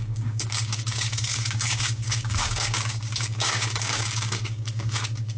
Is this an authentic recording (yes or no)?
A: no